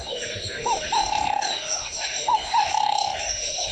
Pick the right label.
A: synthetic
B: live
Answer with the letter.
A